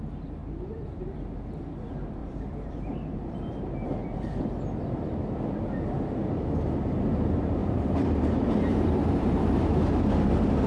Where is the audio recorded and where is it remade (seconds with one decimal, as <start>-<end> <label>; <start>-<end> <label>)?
0.0-0.4 recorded; 0.4-1.0 remade; 1.0-2.2 recorded; 2.2-4.5 remade; 4.5-7.6 recorded; 7.6-9.6 remade; 9.6-10.7 recorded